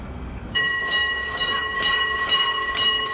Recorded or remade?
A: remade